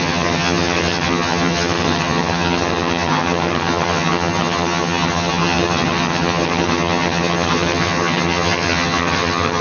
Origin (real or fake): fake